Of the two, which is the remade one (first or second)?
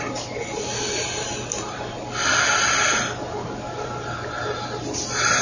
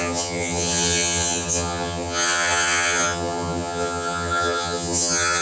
second